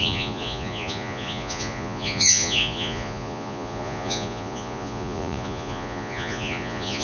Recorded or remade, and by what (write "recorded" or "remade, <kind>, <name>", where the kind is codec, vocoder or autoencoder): remade, vocoder, Vocos